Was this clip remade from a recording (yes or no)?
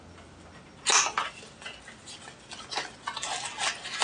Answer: no